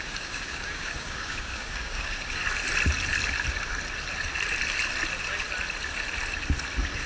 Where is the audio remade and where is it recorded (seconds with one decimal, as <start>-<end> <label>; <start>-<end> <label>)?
0.0-2.4 remade; 2.4-7.1 recorded